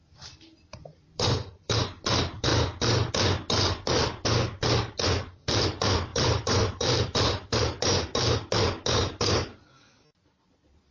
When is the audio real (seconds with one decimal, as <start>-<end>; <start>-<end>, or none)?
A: 0.0-0.7; 1.8-6.1; 7.6-10.9